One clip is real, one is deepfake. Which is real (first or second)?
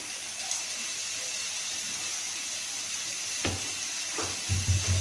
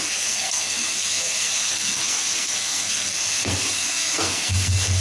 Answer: first